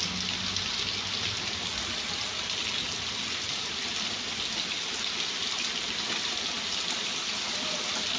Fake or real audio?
real